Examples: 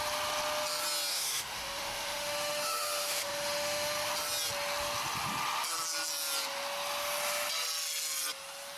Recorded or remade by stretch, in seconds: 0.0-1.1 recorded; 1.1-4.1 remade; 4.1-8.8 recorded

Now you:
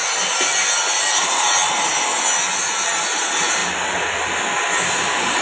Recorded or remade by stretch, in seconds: 0.0-5.4 recorded

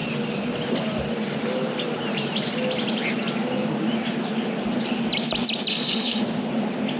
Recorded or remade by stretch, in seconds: 0.0-5.7 recorded; 5.7-6.2 remade; 6.2-7.0 recorded